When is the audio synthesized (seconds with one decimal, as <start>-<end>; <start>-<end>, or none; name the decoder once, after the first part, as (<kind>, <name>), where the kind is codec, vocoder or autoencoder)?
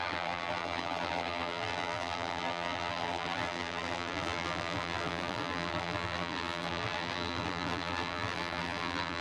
0.0-9.2 (vocoder, BigVGAN v2)